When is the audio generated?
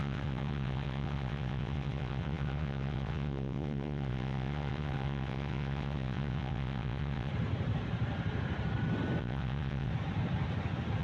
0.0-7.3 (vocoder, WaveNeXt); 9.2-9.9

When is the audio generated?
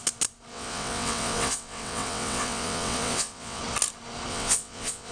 0.5-3.6 (vocoder, WaveNeXt); 4.3-5.1